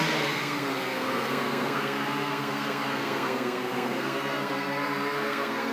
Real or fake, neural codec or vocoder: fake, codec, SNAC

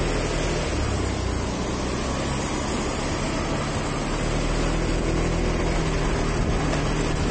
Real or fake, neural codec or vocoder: real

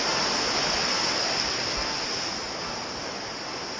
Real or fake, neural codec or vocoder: real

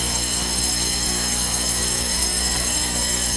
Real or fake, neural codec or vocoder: fake, codec, SNAC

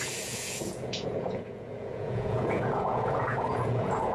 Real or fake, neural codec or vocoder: fake, vocoder, Vocos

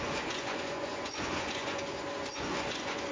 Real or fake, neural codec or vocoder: fake, vocoder, Vocos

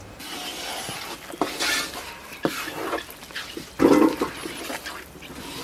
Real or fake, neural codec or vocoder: real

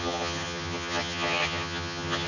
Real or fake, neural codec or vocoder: fake, vocoder, HiFi-GAN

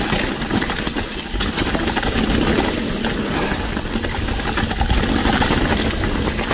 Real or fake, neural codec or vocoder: real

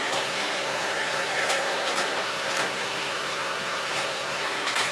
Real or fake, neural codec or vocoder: fake, codec, SNAC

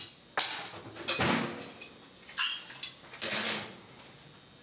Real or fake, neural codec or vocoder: real